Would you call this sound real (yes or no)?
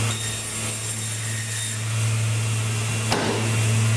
yes